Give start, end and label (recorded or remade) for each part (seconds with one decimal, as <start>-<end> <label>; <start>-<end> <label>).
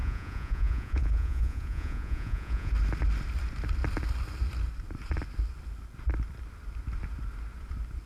0.0-2.7 remade; 2.7-8.1 recorded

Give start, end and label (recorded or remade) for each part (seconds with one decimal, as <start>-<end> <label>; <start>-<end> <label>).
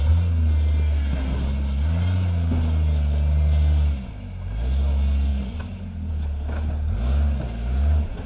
0.0-8.3 recorded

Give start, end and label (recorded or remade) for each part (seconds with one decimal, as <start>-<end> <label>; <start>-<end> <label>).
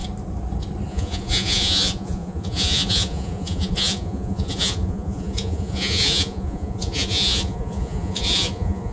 0.0-0.9 recorded; 0.9-8.9 remade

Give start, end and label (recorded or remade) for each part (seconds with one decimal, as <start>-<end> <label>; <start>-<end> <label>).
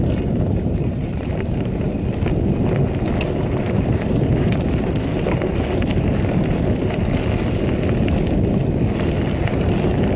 0.0-1.9 remade; 1.9-3.6 recorded; 3.6-5.1 remade; 5.1-10.2 recorded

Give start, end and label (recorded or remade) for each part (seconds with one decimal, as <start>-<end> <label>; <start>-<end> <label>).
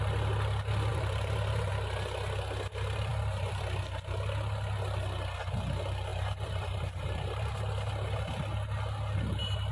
0.0-0.9 recorded; 0.9-1.7 remade; 1.7-3.1 recorded; 3.1-3.6 remade; 3.6-6.1 recorded; 6.1-7.5 remade; 7.5-9.7 recorded